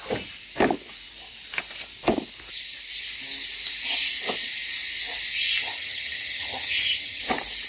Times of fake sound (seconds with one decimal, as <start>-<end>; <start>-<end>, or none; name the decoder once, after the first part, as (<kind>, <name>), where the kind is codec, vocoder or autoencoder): 5.6-7.2 (vocoder, HiFi-GAN)